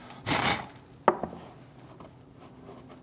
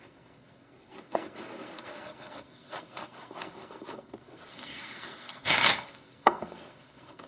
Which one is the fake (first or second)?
second